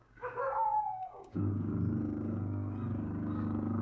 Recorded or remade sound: remade